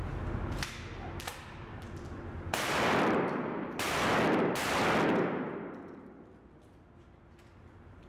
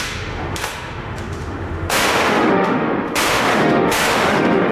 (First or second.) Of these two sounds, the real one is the first